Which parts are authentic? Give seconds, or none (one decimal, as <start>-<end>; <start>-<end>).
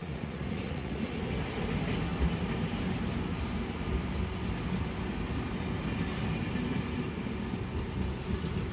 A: 1.2-8.7